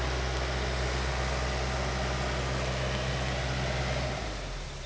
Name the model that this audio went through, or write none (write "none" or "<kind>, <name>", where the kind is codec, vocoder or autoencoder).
none